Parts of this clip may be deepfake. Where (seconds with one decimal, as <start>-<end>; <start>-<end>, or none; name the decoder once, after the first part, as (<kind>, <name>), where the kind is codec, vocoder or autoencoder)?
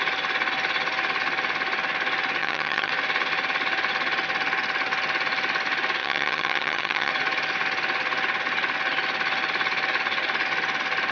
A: 2.4-2.9 (vocoder, HiFi-GAN); 6.0-7.1